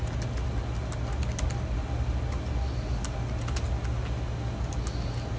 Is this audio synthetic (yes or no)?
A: no